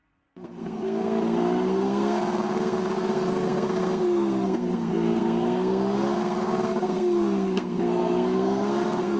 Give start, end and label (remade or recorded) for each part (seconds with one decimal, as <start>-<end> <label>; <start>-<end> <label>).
0.0-9.2 remade